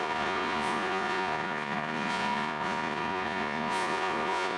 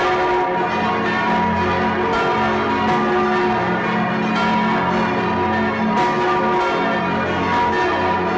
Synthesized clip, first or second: first